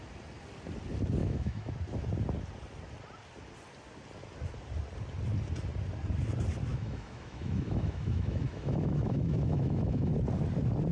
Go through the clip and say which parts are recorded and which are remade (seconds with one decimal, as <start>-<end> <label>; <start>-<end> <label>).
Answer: 0.0-1.2 recorded; 1.2-1.7 remade; 1.7-6.7 recorded; 6.7-10.1 remade; 10.1-10.9 recorded